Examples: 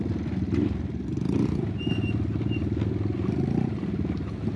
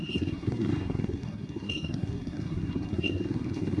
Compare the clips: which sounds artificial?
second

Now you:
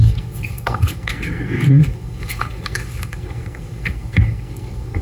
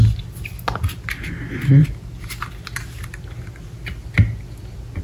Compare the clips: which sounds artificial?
first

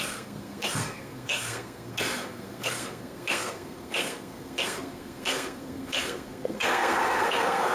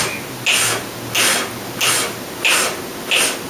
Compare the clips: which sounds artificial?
first